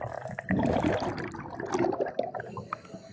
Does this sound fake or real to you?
real